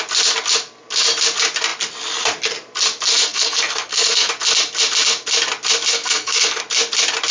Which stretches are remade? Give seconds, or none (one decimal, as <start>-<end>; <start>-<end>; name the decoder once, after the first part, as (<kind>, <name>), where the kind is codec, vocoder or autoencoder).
3.1-4.3 (codec, SNAC); 5.9-6.6